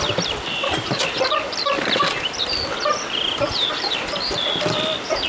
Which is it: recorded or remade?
remade